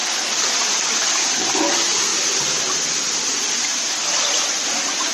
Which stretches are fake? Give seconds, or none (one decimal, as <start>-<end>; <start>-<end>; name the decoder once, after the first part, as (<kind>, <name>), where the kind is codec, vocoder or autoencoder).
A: none